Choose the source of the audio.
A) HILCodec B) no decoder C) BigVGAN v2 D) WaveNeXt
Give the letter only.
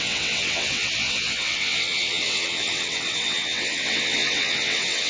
D